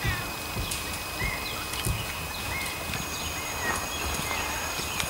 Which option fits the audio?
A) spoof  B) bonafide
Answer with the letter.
B